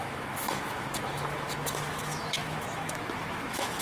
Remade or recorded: remade